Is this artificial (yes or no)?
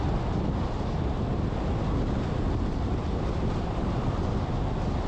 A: no